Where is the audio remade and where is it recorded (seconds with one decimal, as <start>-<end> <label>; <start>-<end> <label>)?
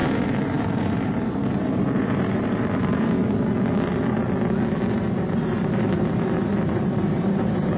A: 0.0-3.2 remade; 3.2-4.9 recorded; 4.9-7.8 remade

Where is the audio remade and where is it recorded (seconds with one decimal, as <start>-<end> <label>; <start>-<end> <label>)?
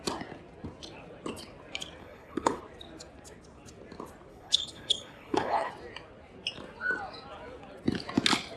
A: 0.0-2.0 recorded; 2.0-2.6 remade; 2.6-4.3 recorded; 4.3-5.7 remade; 5.7-8.6 recorded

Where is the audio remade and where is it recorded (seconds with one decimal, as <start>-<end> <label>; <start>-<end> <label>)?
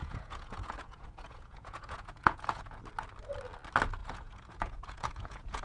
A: 0.0-2.8 remade; 2.8-4.0 recorded; 4.0-5.6 remade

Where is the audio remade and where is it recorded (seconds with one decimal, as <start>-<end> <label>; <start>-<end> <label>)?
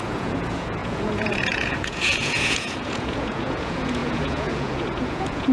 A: 0.0-5.5 remade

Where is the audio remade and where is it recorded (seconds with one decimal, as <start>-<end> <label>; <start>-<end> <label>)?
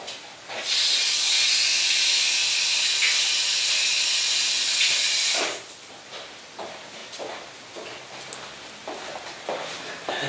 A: 0.0-10.3 recorded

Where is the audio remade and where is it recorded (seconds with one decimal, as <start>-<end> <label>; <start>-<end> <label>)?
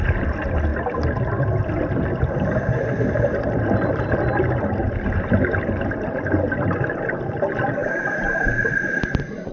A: 0.0-7.8 recorded; 7.8-8.8 remade; 8.8-9.5 recorded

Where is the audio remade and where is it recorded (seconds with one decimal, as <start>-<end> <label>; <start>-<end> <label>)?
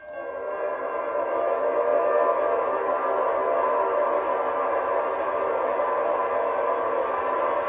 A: 0.0-7.7 recorded